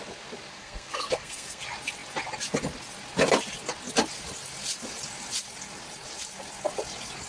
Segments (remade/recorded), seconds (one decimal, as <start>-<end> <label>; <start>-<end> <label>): 0.0-0.5 recorded; 0.5-1.6 remade; 1.6-7.3 recorded

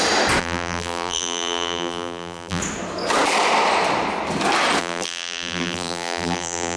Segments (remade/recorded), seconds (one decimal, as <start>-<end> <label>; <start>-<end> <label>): 0.0-0.4 recorded; 0.4-2.6 remade; 2.6-4.8 recorded; 4.8-6.8 remade

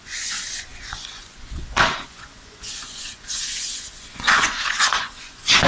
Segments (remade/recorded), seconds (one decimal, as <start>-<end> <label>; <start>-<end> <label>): 0.0-5.7 remade

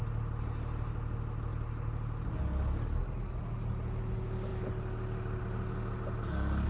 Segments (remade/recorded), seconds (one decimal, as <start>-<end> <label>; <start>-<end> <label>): 0.0-6.7 recorded

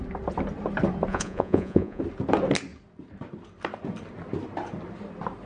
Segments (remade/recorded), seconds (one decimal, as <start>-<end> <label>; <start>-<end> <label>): 0.0-1.1 recorded; 1.1-2.0 remade; 2.0-5.5 recorded

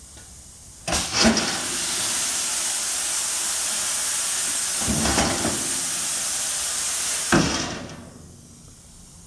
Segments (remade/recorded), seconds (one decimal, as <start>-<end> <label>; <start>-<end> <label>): 0.0-6.1 recorded; 6.1-6.7 remade; 6.7-9.3 recorded

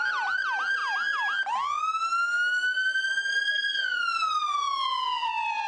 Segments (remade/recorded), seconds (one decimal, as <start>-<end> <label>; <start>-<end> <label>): 0.0-5.7 recorded

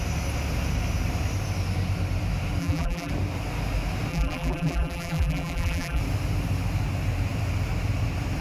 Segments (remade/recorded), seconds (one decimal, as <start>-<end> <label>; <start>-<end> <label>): 0.0-2.6 recorded; 2.6-3.1 remade; 3.1-4.1 recorded; 4.1-6.0 remade; 6.0-8.4 recorded